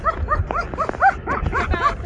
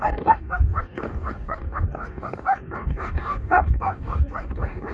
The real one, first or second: first